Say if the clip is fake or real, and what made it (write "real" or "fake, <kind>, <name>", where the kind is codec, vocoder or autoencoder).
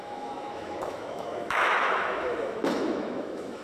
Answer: fake, autoencoder, DAC-VAE